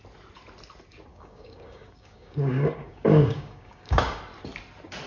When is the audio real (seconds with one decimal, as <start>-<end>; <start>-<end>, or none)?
0.0-1.1; 4.2-5.1